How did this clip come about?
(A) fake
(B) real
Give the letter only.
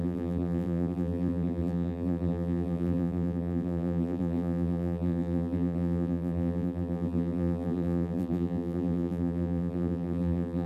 A